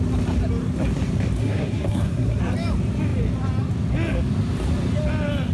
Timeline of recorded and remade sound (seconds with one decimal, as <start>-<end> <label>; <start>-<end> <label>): 0.0-1.4 recorded; 1.4-2.4 remade; 2.4-5.5 recorded